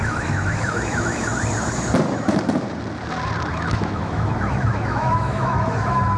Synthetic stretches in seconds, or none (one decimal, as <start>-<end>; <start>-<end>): 0.0-1.3; 3.5-6.2